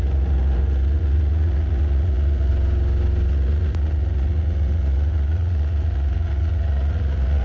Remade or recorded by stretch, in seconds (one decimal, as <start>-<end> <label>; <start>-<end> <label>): 0.0-2.5 remade; 2.5-3.3 recorded; 3.3-7.4 remade